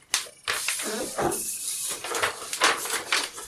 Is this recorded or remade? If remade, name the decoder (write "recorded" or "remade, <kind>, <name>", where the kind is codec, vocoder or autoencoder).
recorded